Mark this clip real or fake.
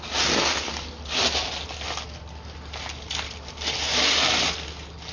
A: fake